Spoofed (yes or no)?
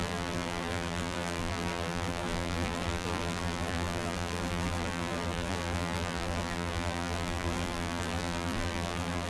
yes